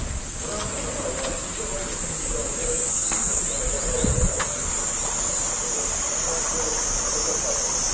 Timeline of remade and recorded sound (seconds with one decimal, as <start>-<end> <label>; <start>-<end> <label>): 0.0-2.9 recorded; 2.9-3.4 remade; 3.4-4.1 recorded; 4.1-4.7 remade; 4.7-7.9 recorded